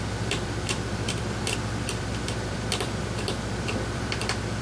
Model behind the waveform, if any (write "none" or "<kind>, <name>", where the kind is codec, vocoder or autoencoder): vocoder, BigVGAN v2